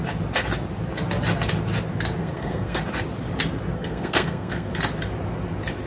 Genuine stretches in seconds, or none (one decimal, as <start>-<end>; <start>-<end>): 0.0-2.2; 2.8-3.7; 4.7-5.9